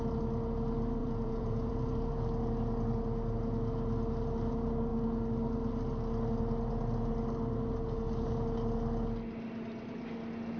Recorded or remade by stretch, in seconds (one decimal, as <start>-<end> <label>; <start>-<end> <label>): 0.0-1.0 recorded; 1.0-1.7 remade; 1.7-10.6 recorded